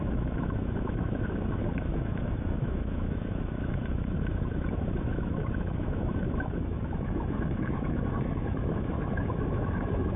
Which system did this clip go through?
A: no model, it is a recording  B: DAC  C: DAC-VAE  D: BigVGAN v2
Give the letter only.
C